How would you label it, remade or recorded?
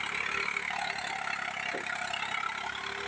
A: recorded